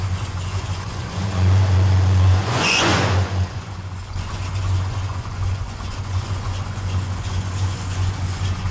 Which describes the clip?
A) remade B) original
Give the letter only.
A